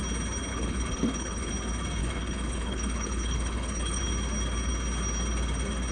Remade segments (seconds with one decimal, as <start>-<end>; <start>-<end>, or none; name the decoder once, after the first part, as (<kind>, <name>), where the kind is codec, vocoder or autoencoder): 0.5-1.5 (codec, HILCodec); 2.0-4.0